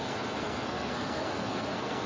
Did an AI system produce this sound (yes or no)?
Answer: yes